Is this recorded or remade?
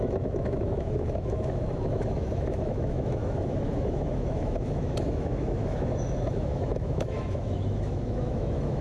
remade